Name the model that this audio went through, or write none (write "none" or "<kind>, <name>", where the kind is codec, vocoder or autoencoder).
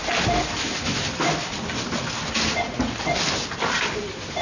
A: none